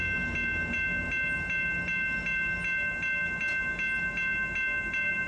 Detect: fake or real real